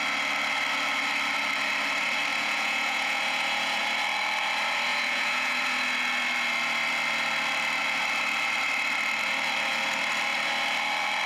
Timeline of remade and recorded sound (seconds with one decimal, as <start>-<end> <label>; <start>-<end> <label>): 0.0-2.3 recorded; 2.3-3.8 remade; 3.8-4.9 recorded; 4.9-5.6 remade; 5.6-11.3 recorded